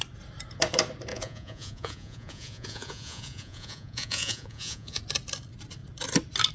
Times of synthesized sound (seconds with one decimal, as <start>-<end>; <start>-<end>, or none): 1.1-5.0